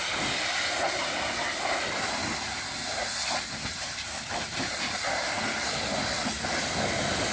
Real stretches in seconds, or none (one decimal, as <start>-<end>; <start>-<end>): 0.0-7.3

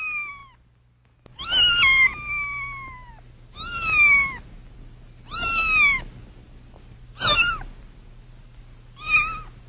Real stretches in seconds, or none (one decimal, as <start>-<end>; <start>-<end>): 0.0-9.7